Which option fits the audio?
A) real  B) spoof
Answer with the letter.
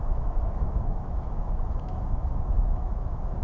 B